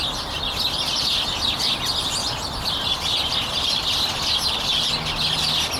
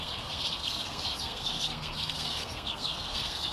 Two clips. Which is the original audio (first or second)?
first